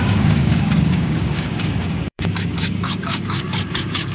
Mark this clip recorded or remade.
remade